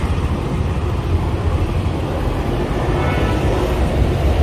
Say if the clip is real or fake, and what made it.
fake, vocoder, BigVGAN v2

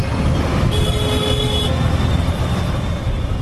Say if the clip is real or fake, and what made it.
real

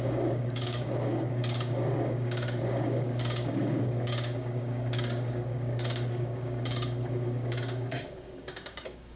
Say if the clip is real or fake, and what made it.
fake, codec, DAC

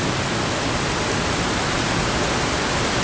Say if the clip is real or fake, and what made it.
real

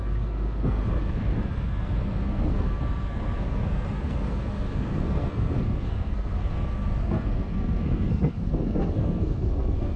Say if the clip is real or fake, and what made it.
fake, codec, SNAC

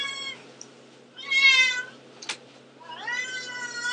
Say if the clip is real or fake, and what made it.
real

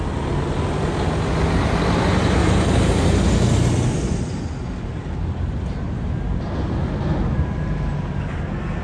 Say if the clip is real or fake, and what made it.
real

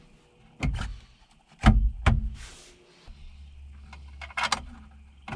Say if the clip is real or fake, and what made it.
real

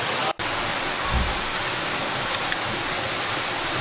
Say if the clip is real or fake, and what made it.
real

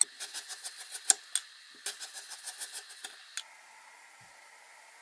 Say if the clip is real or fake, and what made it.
real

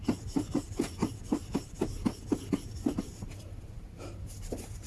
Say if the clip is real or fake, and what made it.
real